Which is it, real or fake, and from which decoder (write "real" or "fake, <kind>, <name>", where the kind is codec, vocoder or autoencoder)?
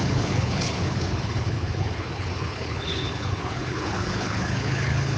fake, codec, HILCodec